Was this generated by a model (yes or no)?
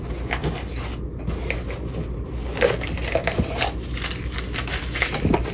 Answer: no